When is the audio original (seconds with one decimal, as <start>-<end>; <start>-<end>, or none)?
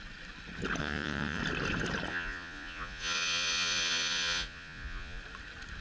0.0-0.8; 1.4-2.1; 5.2-5.8